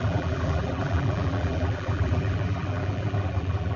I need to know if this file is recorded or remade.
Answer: remade